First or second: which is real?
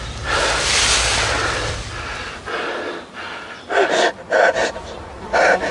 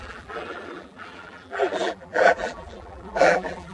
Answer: first